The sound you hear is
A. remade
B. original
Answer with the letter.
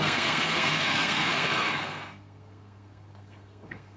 A